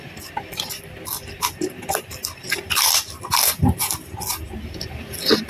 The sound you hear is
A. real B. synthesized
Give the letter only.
A